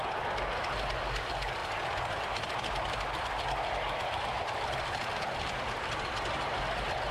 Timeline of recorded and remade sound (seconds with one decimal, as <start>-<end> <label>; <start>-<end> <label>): 0.0-7.1 recorded